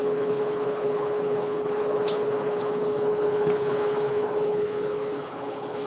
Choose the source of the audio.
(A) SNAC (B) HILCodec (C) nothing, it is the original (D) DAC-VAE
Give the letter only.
B